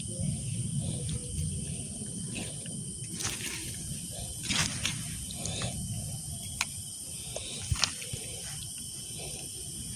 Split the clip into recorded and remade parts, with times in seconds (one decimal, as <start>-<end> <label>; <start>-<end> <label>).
0.0-10.0 recorded